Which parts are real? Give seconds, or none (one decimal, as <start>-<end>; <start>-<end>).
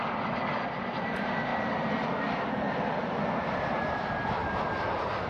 1.5-4.0; 4.4-5.3